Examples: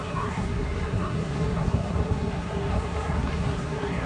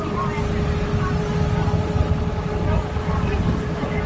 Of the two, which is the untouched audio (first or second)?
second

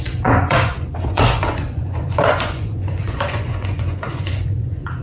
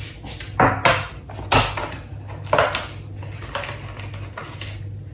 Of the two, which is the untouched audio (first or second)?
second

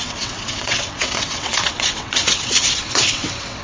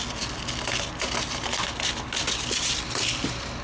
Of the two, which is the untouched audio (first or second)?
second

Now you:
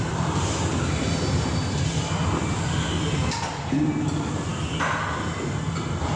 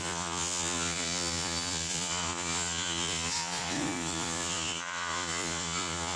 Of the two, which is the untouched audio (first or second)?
first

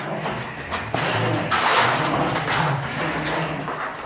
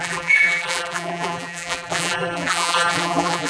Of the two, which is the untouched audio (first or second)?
first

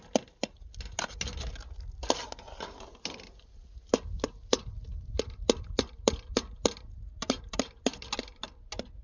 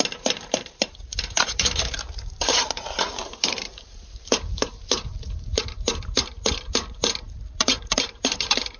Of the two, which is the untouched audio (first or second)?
first